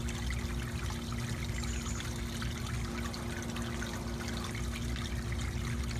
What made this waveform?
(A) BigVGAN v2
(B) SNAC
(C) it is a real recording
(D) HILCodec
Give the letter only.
C